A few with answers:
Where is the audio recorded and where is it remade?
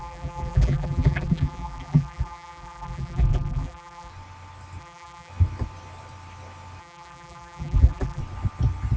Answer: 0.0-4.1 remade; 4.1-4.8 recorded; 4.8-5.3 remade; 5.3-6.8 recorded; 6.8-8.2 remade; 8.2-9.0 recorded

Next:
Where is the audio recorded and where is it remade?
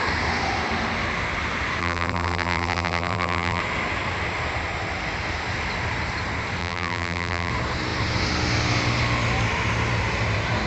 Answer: 0.0-1.8 recorded; 1.8-3.6 remade; 3.6-6.6 recorded; 6.6-7.5 remade; 7.5-10.7 recorded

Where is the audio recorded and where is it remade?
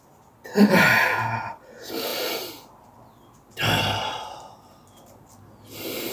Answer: 0.0-6.1 recorded